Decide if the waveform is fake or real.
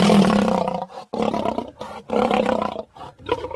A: real